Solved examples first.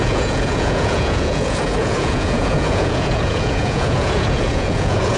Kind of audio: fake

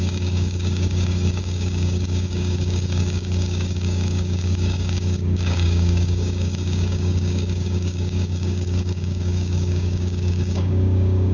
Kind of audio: fake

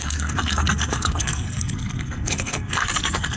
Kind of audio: fake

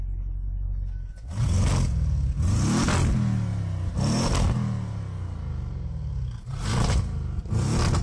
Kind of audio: real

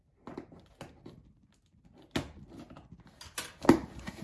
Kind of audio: real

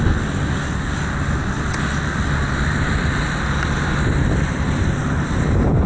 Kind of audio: real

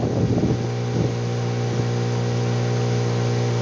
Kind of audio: real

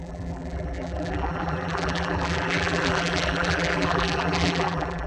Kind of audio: fake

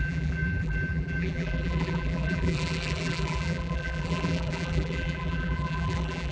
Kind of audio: fake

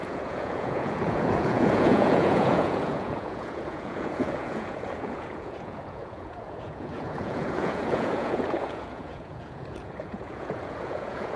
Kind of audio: fake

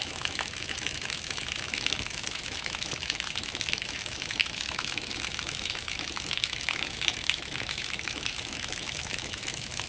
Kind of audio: fake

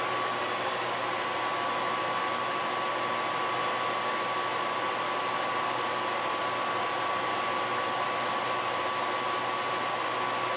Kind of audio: real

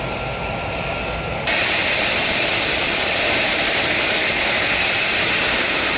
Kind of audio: real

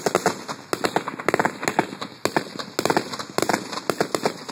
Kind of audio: real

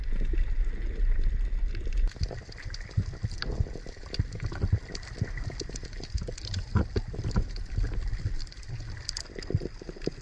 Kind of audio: real